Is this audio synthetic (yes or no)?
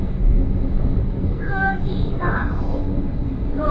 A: yes